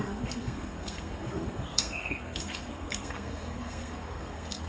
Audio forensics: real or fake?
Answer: fake